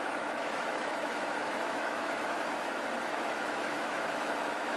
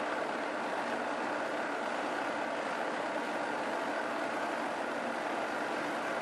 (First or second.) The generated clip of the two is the first